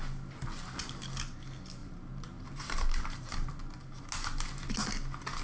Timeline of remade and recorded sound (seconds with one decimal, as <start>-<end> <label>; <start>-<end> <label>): 0.0-1.8 recorded; 1.8-3.5 remade; 3.5-5.4 recorded